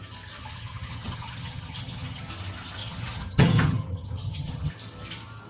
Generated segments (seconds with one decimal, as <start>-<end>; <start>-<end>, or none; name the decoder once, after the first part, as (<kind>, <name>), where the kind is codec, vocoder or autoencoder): 0.4-2.3 (vocoder, HiFi-GAN); 2.8-4.7